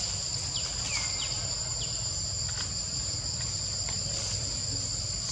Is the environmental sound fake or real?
real